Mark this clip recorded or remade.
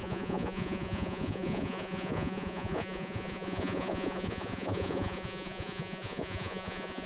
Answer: remade